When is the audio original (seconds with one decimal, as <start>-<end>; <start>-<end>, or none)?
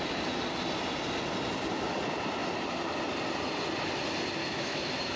0.0-4.4